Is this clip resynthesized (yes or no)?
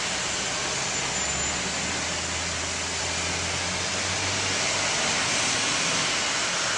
no